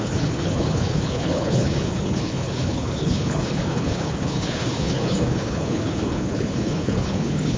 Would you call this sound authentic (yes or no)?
no